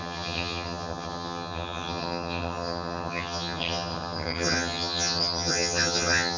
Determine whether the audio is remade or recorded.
remade